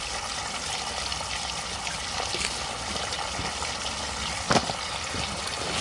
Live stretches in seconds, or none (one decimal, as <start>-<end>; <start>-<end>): 0.0-5.8